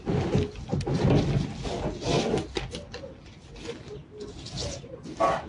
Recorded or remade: recorded